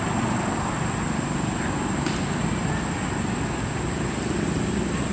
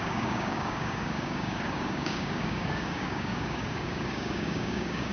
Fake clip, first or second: second